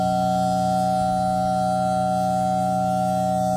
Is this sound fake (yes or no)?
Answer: no